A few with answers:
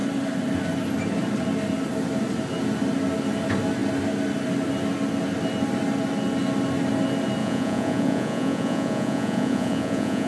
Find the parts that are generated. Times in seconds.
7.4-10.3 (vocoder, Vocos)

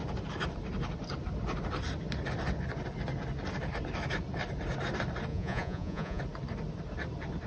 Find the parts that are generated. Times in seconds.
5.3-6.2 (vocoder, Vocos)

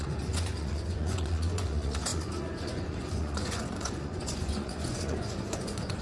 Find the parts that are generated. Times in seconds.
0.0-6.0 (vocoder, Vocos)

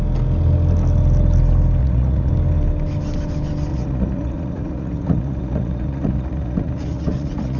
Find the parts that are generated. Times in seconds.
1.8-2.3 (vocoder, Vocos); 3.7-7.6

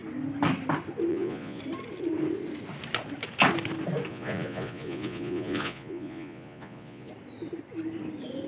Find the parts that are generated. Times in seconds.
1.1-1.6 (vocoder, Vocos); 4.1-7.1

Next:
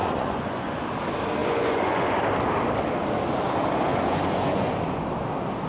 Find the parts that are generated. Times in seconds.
0.0-0.9 (vocoder, Vocos); 1.4-2.1; 3.9-5.0